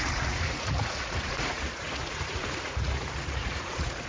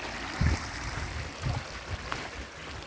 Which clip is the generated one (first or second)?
first